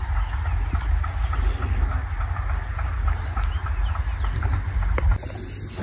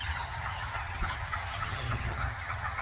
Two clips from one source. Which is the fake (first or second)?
second